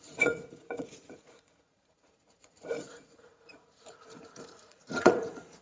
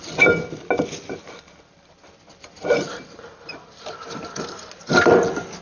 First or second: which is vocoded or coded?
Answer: first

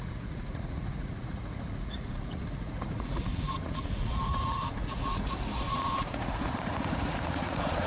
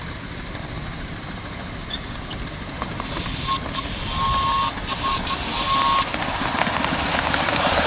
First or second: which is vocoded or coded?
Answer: first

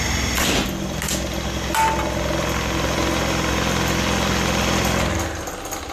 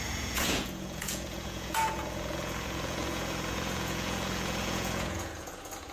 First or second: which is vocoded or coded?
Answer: second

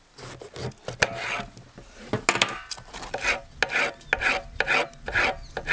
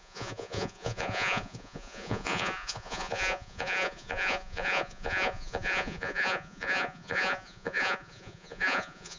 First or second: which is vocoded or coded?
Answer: second